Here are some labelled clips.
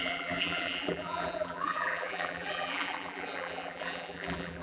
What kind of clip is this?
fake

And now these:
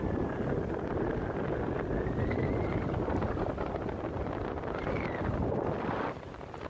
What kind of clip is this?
real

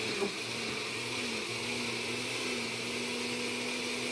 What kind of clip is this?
real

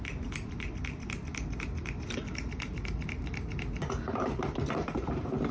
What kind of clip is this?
fake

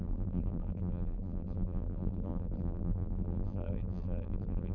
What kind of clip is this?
fake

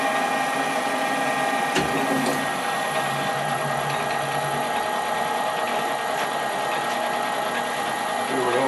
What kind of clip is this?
real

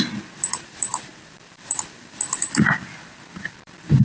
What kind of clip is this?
fake